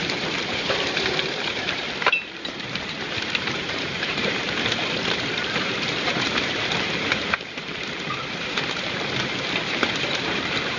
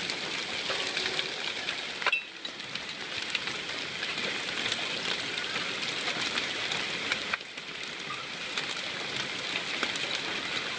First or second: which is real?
second